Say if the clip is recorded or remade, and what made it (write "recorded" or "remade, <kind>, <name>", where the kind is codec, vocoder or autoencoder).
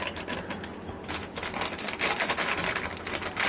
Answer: recorded